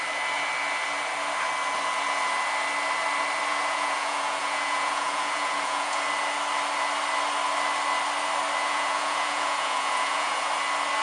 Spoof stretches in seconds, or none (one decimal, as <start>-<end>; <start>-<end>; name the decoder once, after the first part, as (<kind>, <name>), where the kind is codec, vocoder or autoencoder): 3.5-6.1 (vocoder, Vocos); 8.6-10.5